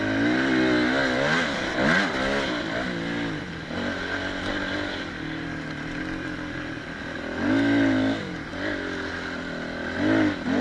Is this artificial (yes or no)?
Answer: no